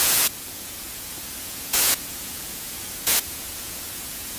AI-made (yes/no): yes